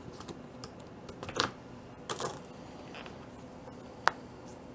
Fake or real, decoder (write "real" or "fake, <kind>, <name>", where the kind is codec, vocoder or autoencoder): real